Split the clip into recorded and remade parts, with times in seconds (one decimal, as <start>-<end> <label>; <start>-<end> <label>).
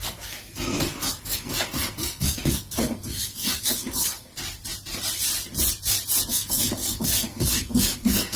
0.0-4.3 remade; 4.3-6.3 recorded; 6.3-8.4 remade